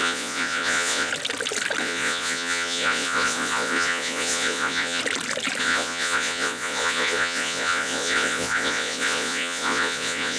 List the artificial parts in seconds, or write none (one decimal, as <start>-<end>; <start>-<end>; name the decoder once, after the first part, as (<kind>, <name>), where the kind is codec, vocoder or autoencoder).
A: 0.0-1.1 (vocoder, Vocos); 1.8-5.0; 5.6-10.4